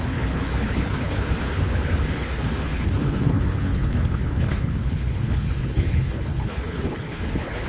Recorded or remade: remade